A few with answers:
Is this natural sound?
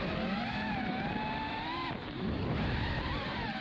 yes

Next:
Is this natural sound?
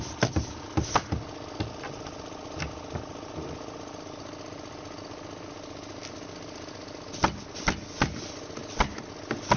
yes